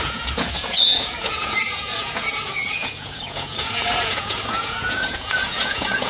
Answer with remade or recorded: remade